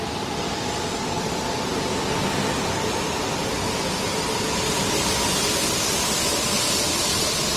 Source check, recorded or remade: recorded